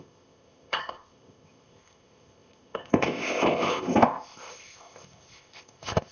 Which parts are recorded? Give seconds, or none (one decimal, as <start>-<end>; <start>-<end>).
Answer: none